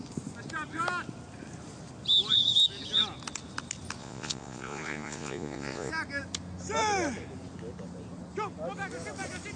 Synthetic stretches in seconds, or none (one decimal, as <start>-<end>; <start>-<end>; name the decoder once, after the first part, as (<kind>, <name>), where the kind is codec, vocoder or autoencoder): 4.0-5.9 (vocoder, Vocos)